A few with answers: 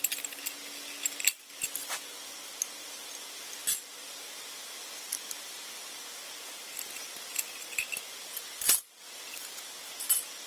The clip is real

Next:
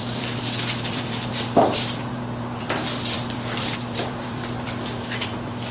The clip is fake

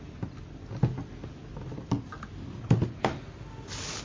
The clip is real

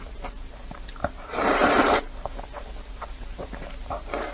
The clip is fake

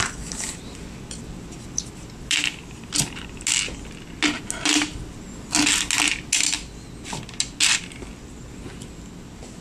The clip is real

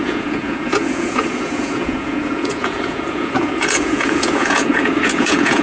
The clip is fake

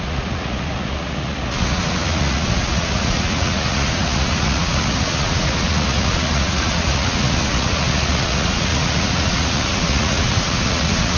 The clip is fake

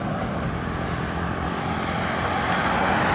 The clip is real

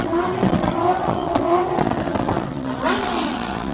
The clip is fake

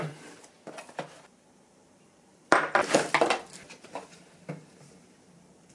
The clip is fake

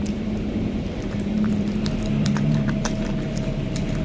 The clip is fake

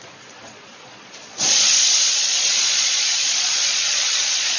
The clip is fake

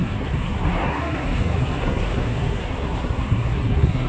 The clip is fake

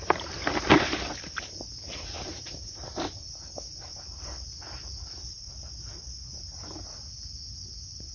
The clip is real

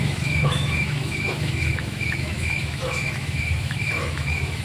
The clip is fake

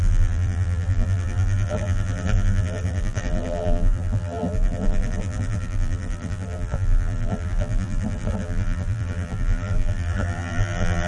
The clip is fake